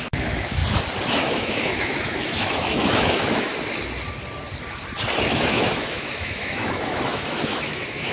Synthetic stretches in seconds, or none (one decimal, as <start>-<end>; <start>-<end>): 0.0-0.6; 1.2-3.5; 5.2-8.1